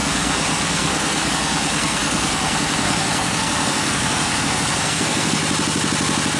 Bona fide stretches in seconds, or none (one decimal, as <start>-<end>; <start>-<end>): 5.4-6.4